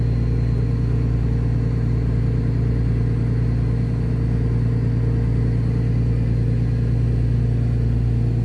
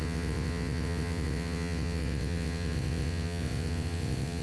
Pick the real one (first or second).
first